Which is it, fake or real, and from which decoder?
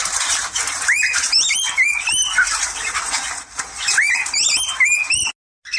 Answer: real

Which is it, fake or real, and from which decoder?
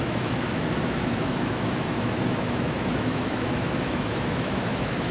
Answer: fake, autoencoder, DAC-VAE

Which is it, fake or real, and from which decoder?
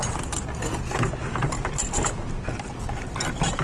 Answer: real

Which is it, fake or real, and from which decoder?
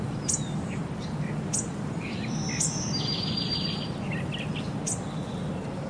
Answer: real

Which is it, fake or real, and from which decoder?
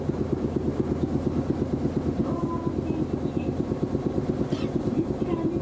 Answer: real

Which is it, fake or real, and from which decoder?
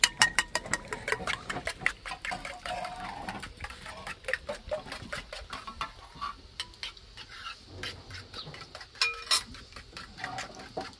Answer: real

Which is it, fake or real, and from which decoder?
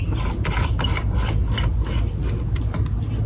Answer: real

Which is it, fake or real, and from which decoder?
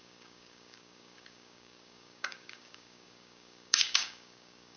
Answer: fake, codec, DAC